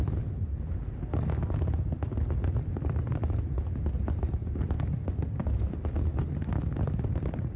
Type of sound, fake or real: real